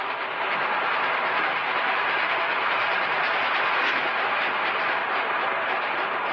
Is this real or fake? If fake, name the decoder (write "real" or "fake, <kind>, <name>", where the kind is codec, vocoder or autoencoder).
real